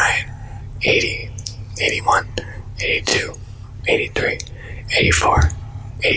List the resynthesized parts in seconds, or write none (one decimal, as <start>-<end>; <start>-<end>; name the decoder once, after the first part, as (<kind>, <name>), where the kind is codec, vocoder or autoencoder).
0.0-6.2 (vocoder, BigVGAN v2)